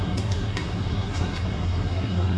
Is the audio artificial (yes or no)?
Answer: yes